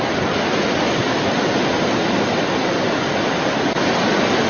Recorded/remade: recorded